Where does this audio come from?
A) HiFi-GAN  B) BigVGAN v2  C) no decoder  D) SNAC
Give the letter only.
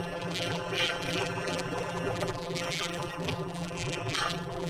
B